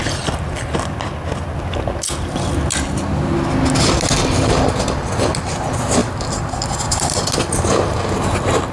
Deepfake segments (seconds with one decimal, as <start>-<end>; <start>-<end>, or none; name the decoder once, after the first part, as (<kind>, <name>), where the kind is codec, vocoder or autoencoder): none